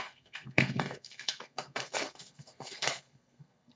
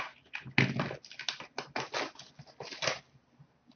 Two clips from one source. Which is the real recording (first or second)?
second